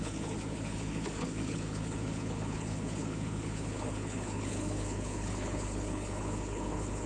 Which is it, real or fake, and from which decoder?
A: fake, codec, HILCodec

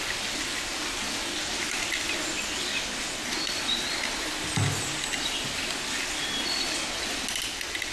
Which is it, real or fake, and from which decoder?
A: real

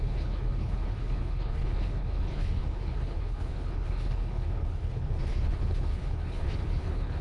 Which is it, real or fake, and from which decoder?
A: fake, codec, HILCodec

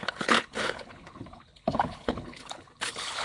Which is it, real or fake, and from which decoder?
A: fake, codec, HILCodec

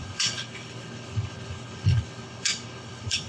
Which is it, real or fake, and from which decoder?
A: fake, codec, HILCodec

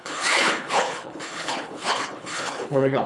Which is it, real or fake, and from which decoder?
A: fake, codec, HILCodec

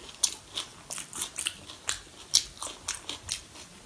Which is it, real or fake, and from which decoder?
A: real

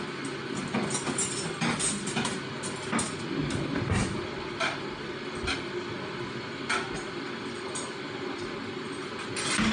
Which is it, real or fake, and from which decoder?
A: real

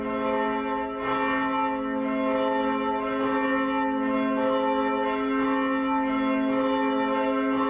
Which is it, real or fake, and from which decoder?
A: real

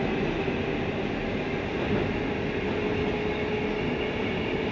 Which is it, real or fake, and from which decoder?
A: real